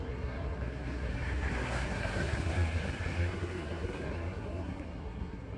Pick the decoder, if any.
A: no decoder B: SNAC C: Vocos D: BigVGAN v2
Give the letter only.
B